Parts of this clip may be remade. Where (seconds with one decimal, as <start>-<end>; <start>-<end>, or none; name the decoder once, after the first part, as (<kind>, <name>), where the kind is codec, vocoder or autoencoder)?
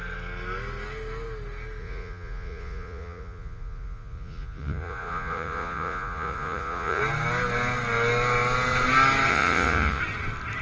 1.8-7.0 (vocoder, Vocos); 9.3-10.0